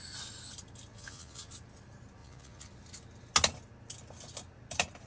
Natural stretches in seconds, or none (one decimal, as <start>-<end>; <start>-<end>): 0.0-0.9; 1.5-2.2; 2.7-5.1